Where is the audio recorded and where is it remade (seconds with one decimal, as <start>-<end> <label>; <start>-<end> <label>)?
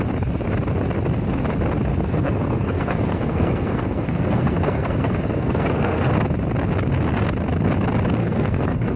0.0-1.9 recorded; 1.9-6.1 remade; 6.1-8.2 recorded; 8.2-9.0 remade